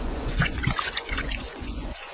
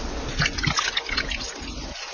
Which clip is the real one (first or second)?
second